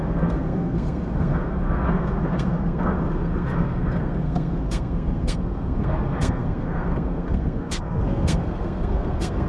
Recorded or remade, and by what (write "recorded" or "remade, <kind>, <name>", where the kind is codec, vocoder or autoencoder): remade, codec, SNAC